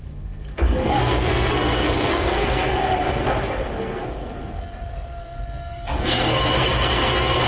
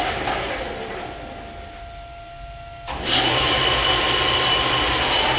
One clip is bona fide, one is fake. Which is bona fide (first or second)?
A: second